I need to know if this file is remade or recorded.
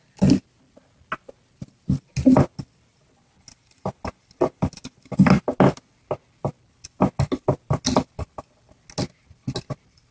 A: recorded